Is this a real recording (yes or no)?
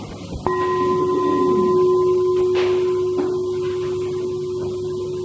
yes